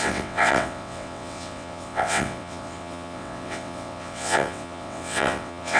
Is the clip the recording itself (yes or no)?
no